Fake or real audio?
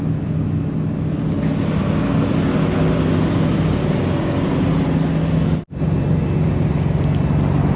real